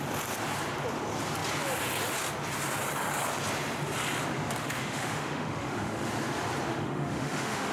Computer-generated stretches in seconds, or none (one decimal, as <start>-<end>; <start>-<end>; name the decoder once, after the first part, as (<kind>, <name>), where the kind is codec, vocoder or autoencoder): 4.6-6.1 (autoencoder, DAC-VAE); 6.7-7.7